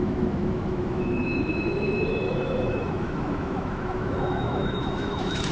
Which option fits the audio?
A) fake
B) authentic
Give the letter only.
A